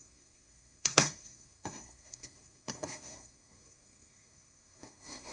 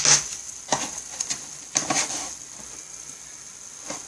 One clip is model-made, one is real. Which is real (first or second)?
second